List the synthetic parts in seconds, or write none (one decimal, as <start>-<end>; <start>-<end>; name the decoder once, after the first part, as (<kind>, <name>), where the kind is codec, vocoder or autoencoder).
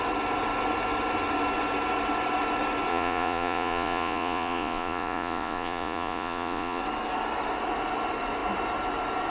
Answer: 2.9-6.8 (vocoder, Vocos)